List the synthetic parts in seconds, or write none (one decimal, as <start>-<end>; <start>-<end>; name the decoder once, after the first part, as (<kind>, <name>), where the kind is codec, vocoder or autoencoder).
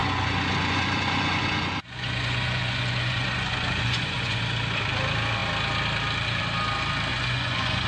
0.0-4.4 (vocoder, Vocos); 7.1-7.9